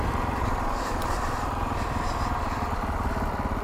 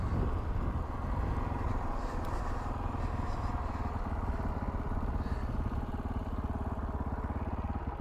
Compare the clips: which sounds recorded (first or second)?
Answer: second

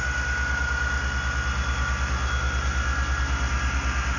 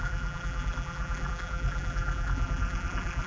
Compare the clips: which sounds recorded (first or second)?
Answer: first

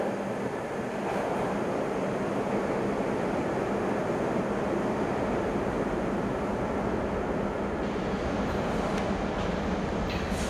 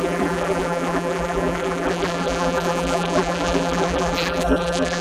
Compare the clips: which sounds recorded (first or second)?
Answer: first